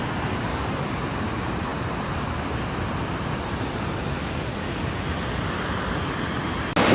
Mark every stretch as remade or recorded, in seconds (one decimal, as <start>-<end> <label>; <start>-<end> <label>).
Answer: 0.0-0.5 recorded; 0.5-1.0 remade; 1.0-4.2 recorded; 4.2-4.8 remade; 4.8-6.9 recorded